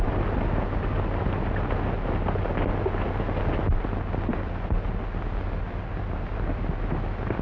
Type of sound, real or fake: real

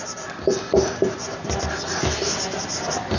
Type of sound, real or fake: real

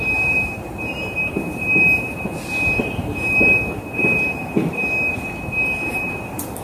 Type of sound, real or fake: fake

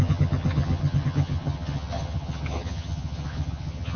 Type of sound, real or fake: fake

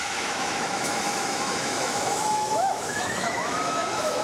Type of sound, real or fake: fake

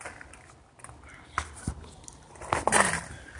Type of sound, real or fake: real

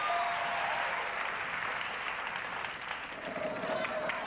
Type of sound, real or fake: real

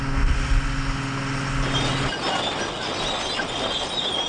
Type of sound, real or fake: real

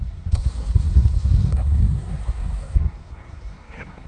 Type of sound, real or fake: fake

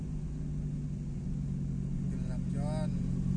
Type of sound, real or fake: real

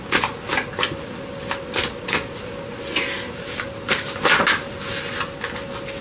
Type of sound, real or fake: real